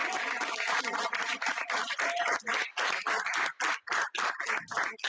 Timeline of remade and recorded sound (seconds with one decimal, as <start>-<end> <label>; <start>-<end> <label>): 0.0-5.1 recorded